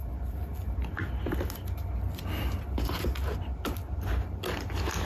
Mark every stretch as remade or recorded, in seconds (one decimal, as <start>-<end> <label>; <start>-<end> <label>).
0.0-5.1 recorded